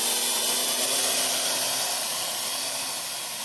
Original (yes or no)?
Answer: yes